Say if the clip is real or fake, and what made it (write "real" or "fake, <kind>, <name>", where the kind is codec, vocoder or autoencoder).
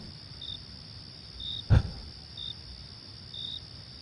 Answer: real